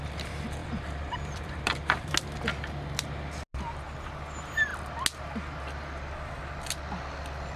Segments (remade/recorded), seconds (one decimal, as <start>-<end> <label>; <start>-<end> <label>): 0.0-0.6 recorded; 0.6-2.1 remade; 2.1-7.6 recorded